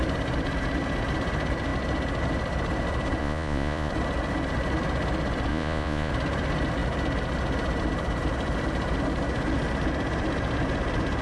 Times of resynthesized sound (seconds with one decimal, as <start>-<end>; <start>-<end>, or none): 3.2-3.9; 5.5-6.1